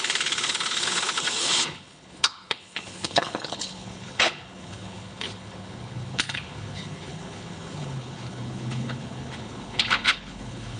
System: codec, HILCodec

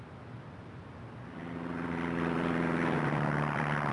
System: vocoder, BigVGAN v2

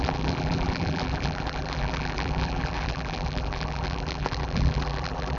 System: vocoder, BigVGAN v2